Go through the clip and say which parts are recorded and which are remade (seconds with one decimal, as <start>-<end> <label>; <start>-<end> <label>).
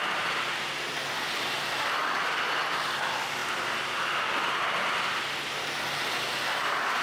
0.0-7.0 recorded